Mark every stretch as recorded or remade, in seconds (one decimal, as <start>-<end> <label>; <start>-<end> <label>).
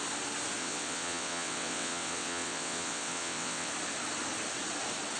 0.0-0.6 recorded; 0.6-3.7 remade; 3.7-5.2 recorded